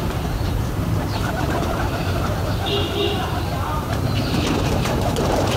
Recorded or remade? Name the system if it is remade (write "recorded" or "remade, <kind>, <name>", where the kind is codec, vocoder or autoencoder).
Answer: remade, vocoder, BigVGAN v2